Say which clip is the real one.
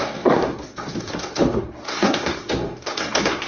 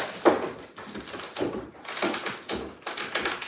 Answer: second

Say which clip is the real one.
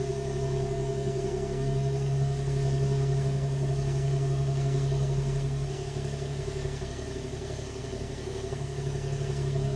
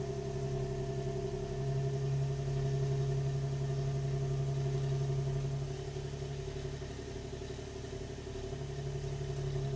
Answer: second